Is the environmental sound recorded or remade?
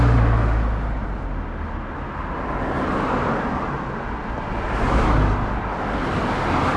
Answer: recorded